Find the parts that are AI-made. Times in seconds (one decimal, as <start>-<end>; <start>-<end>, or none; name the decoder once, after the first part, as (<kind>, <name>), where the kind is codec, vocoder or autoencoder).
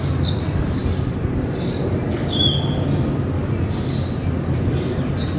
none